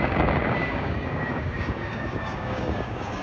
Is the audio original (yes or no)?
no